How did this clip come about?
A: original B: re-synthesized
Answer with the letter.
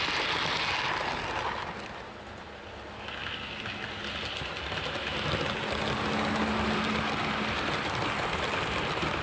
A